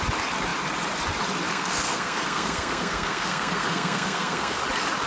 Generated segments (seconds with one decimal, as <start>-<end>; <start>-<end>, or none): 1.5-4.6